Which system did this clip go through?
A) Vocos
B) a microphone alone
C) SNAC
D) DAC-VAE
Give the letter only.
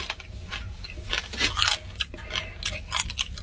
B